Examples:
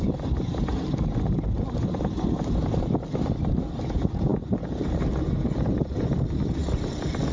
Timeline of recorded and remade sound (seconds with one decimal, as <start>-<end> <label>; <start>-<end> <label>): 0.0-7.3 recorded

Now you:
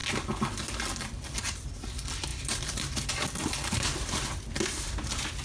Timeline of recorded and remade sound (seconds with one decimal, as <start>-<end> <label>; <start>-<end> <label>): 0.0-2.3 recorded; 2.3-3.1 remade; 3.1-5.4 recorded

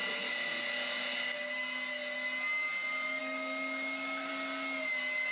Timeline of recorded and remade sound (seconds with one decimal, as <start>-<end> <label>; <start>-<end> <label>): 0.0-3.2 recorded; 3.2-4.3 remade; 4.3-5.3 recorded

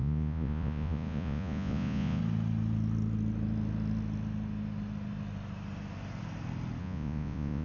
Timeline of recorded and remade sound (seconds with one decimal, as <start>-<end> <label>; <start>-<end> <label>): 0.0-2.2 remade; 2.2-6.8 recorded; 6.8-7.6 remade

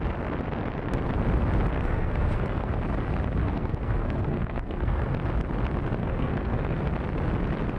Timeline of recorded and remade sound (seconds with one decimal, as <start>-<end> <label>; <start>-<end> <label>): 0.0-1.7 recorded; 1.7-2.7 remade; 2.7-3.4 recorded; 3.4-5.1 remade; 5.1-6.0 recorded; 6.0-6.8 remade; 6.8-7.8 recorded

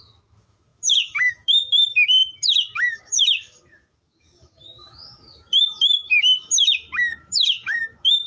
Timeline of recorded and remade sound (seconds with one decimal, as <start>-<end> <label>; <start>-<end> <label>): 0.0-8.3 remade

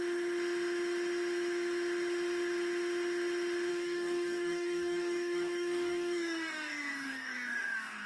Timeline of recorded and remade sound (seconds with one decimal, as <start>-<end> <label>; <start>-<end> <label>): 0.0-3.7 recorded; 3.7-8.1 remade

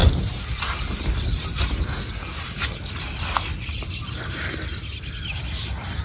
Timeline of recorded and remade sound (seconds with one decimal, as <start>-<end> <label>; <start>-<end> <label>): 0.0-1.2 remade; 1.2-3.7 recorded; 3.7-4.4 remade; 4.4-6.0 recorded